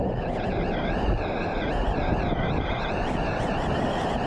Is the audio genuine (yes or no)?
yes